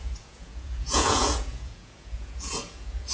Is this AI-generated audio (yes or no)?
yes